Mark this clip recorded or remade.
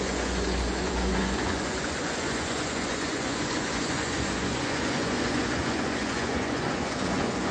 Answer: remade